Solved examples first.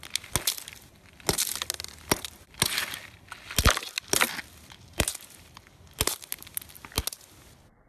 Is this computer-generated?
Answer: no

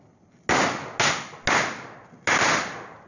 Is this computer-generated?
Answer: no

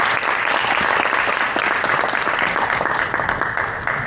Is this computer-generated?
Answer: no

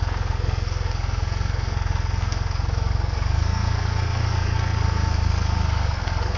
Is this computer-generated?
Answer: yes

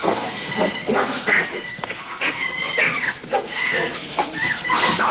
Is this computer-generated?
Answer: yes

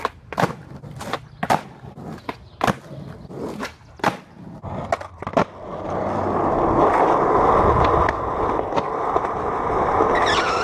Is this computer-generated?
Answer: no